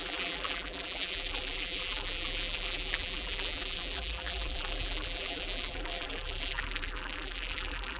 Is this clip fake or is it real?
fake